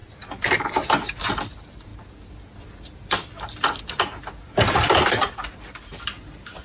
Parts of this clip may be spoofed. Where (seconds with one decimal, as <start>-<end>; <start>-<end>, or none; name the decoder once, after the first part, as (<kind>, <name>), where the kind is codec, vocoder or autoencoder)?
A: none

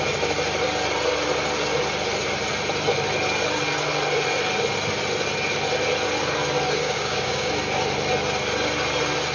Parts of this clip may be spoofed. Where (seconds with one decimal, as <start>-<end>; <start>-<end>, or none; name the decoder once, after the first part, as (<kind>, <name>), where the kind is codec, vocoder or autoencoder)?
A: 6.8-7.5 (codec, DAC)

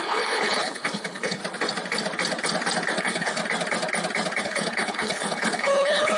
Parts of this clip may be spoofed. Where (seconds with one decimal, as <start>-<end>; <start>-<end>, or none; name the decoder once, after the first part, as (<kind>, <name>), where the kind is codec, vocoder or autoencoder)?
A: 0.0-1.4 (codec, HILCodec); 3.0-3.4; 4.4-6.2

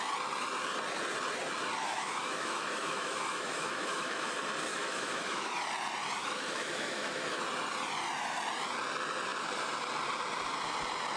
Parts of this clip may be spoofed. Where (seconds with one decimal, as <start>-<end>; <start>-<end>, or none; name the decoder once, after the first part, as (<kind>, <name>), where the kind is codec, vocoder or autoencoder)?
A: 1.8-4.3 (autoencoder, DAC-VAE); 4.7-5.6; 6.2-7.4

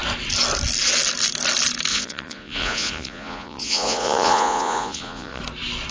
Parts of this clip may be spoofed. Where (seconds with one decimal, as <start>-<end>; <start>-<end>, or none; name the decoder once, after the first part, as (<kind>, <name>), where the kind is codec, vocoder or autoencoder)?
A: 1.9-5.4 (vocoder, Vocos)